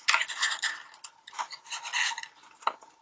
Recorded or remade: recorded